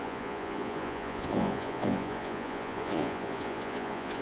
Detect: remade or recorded remade